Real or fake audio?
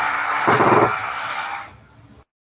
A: real